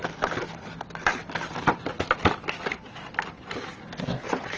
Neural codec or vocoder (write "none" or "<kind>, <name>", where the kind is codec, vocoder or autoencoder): none